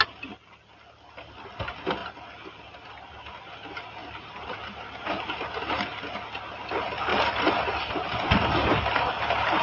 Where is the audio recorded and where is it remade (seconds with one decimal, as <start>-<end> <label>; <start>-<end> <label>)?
0.0-7.1 recorded; 7.1-8.4 remade; 8.4-9.6 recorded